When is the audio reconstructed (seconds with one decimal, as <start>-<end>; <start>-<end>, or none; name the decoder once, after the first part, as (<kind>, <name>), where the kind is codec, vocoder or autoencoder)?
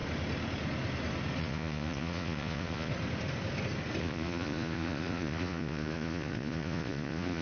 1.4-2.9 (vocoder, Vocos); 4.0-7.4